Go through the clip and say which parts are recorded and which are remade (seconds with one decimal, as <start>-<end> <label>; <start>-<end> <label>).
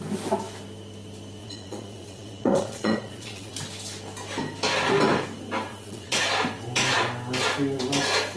0.0-1.4 recorded; 1.4-3.5 remade; 3.5-5.7 recorded; 5.7-6.2 remade; 6.2-8.4 recorded